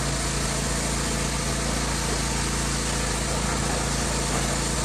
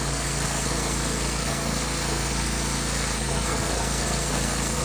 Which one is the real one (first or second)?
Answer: first